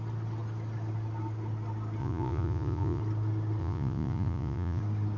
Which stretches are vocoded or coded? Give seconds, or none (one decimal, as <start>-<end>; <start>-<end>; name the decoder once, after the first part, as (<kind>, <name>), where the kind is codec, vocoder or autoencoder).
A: 2.0-3.0 (vocoder, Vocos); 3.6-4.8